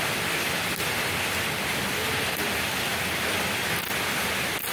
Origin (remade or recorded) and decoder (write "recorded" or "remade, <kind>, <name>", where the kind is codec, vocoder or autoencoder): recorded